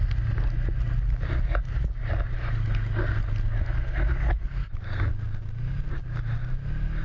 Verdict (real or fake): real